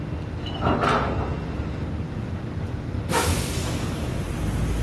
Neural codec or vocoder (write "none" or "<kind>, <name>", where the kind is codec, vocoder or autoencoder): none